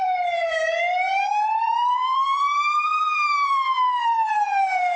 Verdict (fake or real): fake